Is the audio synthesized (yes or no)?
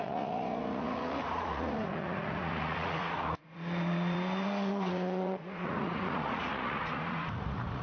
yes